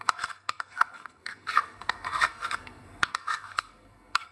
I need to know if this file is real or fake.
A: fake